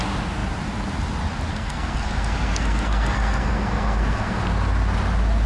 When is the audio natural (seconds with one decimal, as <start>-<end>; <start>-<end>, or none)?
0.0-1.5; 4.4-5.5